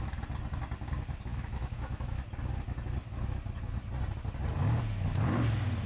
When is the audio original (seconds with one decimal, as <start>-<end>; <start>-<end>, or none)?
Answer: 0.0-1.3; 2.2-5.9